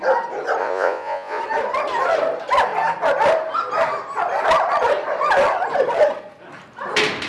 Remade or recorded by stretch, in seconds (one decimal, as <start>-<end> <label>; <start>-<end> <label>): 0.0-0.6 recorded; 0.6-1.4 remade; 1.4-7.3 recorded